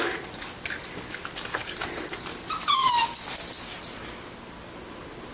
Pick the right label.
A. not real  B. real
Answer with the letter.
B